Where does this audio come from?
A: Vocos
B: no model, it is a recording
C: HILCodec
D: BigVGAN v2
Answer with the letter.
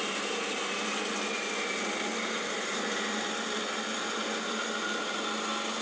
B